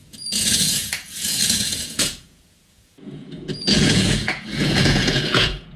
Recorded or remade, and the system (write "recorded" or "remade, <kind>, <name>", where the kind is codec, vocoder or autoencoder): remade, vocoder, Vocos